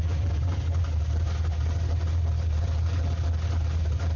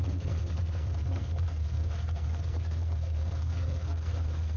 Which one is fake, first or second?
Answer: second